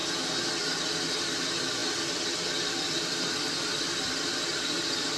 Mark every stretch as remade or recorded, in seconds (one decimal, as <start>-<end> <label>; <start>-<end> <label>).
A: 0.0-5.2 recorded